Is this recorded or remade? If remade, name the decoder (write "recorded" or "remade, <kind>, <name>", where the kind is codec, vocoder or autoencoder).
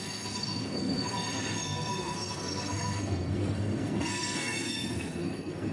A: remade, codec, SNAC